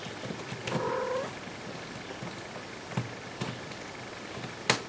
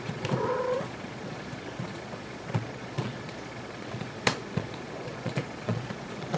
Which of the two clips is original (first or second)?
first